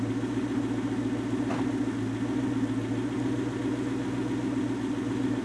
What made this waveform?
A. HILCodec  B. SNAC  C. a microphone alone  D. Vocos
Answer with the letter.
C